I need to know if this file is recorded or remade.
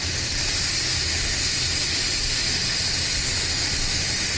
recorded